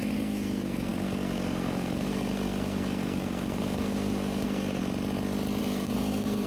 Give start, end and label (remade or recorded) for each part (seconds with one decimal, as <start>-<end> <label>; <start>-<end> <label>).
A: 0.0-4.8 remade; 4.8-5.6 recorded; 5.6-6.5 remade